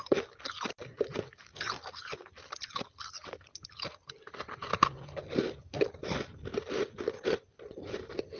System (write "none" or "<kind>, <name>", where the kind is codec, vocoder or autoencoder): none